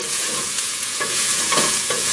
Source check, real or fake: fake